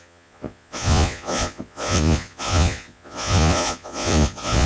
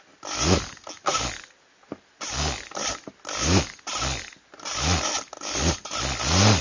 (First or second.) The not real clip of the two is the first